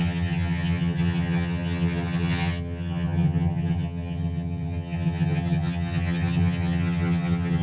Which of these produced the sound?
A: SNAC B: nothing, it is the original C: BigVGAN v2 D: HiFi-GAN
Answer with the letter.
D